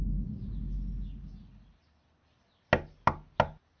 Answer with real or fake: real